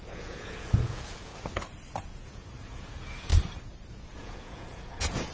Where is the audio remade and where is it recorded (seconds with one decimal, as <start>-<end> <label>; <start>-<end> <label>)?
0.0-1.3 remade; 1.3-2.0 recorded; 2.0-3.3 remade; 3.3-3.9 recorded; 3.9-5.3 remade